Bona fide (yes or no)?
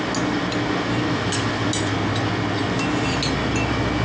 yes